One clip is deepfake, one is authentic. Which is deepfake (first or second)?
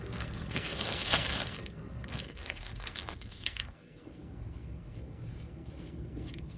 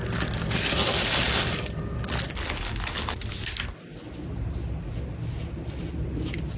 first